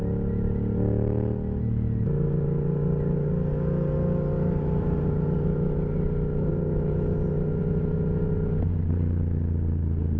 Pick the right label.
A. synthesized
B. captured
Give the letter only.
B